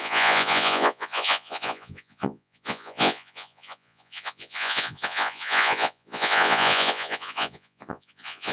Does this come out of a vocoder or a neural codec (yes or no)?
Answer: yes